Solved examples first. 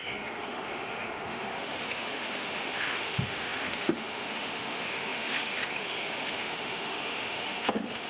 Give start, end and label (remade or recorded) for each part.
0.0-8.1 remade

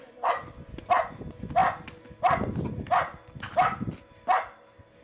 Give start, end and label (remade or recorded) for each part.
0.0-5.0 recorded

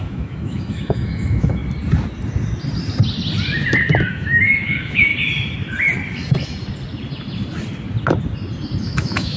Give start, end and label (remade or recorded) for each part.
0.0-1.6 remade; 1.6-4.1 recorded; 4.1-5.1 remade; 5.1-8.8 recorded; 8.8-9.4 remade

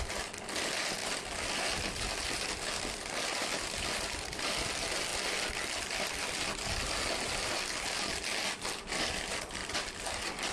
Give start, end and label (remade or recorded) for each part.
0.0-10.5 recorded

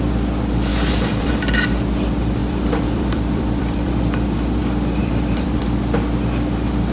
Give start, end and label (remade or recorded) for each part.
0.0-0.7 recorded; 0.7-1.3 remade; 1.3-2.4 recorded; 2.4-4.6 remade; 4.6-5.0 recorded; 5.0-5.6 remade; 5.6-6.9 recorded

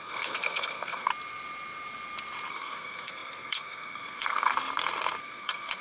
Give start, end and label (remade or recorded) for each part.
0.0-1.1 remade; 1.1-2.5 recorded; 2.5-4.5 remade; 4.5-5.2 recorded; 5.2-5.8 remade